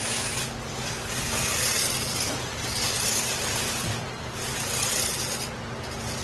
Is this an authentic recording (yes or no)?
yes